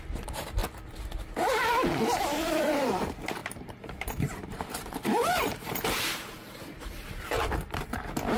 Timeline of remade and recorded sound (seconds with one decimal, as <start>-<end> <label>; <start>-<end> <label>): 0.0-0.6 remade; 0.6-2.7 recorded; 2.7-8.4 remade